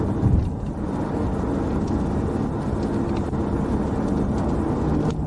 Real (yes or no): yes